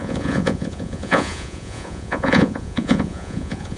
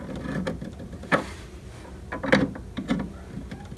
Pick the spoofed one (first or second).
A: first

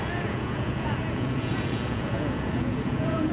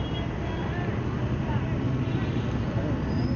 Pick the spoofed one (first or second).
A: first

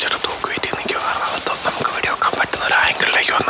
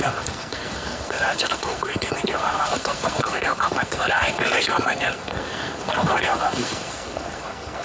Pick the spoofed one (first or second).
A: second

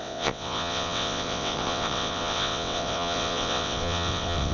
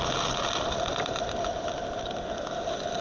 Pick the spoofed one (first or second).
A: first